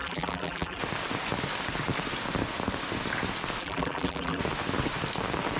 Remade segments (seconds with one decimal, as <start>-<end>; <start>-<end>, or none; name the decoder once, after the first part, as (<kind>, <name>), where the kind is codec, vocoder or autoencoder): 0.0-0.8 (vocoder, BigVGAN v2); 3.6-4.4